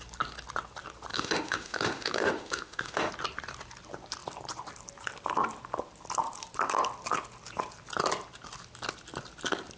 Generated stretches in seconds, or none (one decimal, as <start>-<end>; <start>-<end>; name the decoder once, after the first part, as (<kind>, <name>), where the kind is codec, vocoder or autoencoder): 1.1-3.1 (autoencoder, DAC-VAE)